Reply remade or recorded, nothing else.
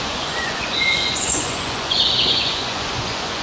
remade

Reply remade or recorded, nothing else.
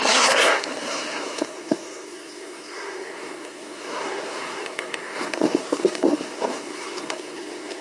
remade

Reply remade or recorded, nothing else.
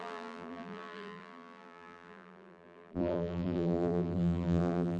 remade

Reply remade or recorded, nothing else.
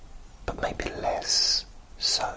recorded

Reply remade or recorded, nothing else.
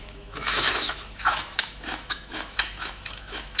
remade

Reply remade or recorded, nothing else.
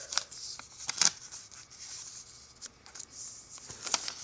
recorded